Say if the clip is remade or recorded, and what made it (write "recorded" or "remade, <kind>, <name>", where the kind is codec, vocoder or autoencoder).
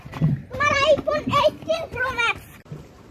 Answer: remade, vocoder, BigVGAN v2